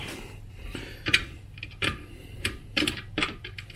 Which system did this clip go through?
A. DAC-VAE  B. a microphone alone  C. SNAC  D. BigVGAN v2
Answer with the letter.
D